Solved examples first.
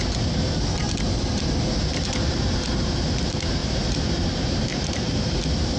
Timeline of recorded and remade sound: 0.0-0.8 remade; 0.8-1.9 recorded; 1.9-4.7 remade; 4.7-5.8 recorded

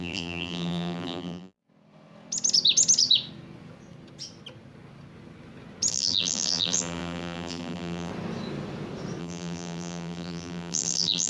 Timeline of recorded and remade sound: 0.0-1.6 remade; 1.6-5.9 recorded; 5.9-8.1 remade; 8.1-9.2 recorded; 9.2-11.3 remade

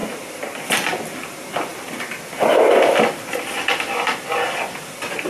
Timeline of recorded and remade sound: 0.0-0.6 remade; 0.6-5.3 recorded

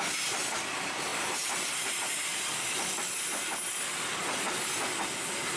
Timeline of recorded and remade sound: 0.0-1.1 recorded; 1.1-1.9 remade; 1.9-5.6 recorded